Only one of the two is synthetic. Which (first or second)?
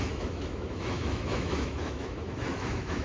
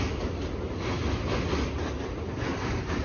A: first